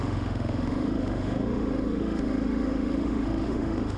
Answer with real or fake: fake